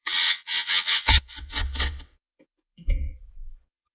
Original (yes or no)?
no